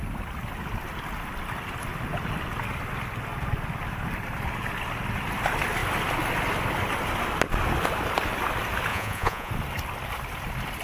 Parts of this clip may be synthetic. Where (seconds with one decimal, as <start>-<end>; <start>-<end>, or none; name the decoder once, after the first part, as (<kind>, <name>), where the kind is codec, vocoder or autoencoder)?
8.9-9.5 (vocoder, Vocos)